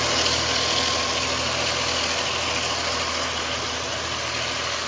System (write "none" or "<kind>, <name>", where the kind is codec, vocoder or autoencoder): none